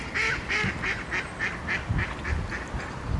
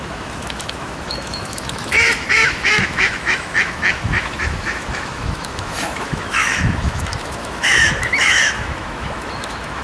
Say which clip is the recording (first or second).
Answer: first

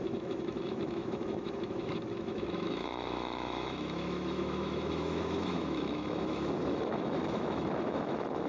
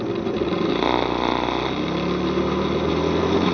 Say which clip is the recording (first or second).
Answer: second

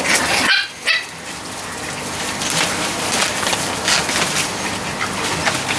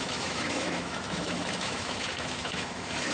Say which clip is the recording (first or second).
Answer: first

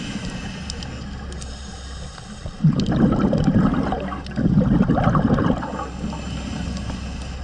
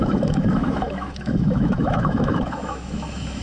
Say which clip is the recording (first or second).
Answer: first